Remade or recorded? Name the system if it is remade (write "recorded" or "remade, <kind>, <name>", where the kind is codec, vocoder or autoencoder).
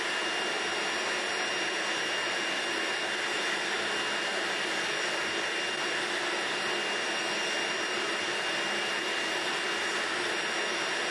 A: recorded